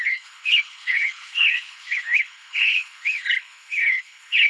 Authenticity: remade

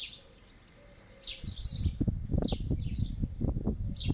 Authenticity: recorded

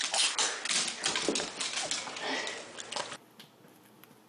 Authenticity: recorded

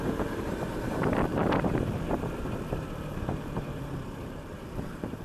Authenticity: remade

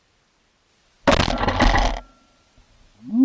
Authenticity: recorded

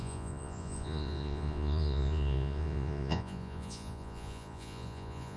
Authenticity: remade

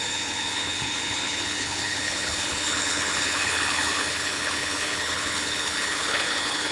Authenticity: remade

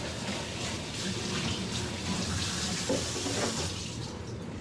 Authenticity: recorded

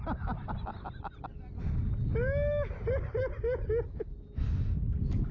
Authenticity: recorded